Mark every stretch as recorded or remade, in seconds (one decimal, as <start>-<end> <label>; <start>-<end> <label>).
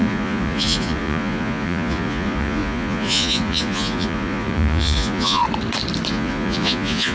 0.0-5.4 remade; 5.4-6.1 recorded; 6.1-7.1 remade